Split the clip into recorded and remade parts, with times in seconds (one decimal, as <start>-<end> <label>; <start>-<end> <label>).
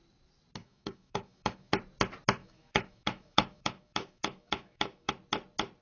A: 0.0-0.6 recorded; 0.6-1.7 remade; 1.7-2.4 recorded; 2.4-5.1 remade; 5.1-5.8 recorded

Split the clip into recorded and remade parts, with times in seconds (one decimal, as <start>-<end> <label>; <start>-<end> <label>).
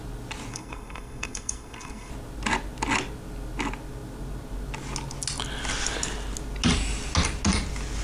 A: 0.0-0.5 recorded; 0.5-2.1 remade; 2.1-8.0 recorded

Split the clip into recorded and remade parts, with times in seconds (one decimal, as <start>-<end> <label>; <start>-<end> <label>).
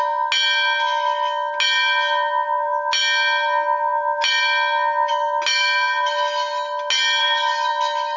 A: 0.0-7.2 recorded; 7.2-7.7 remade; 7.7-8.2 recorded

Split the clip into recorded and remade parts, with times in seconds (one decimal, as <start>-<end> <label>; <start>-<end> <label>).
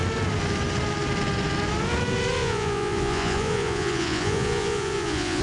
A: 0.0-2.4 recorded; 2.4-5.4 remade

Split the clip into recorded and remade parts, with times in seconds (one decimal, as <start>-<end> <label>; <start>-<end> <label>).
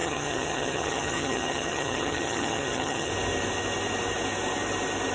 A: 0.0-3.1 remade; 3.1-5.1 recorded